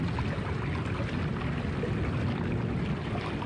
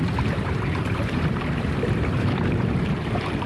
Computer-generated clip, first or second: second